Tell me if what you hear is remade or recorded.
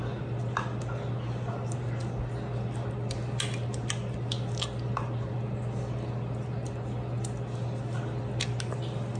recorded